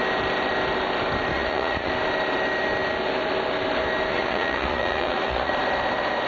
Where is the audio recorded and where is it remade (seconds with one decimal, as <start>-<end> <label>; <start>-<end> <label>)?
0.0-1.3 recorded; 1.3-1.9 remade; 1.9-4.1 recorded; 4.1-5.5 remade; 5.5-6.3 recorded